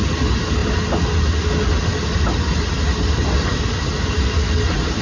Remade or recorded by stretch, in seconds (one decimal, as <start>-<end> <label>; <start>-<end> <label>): 0.0-5.0 recorded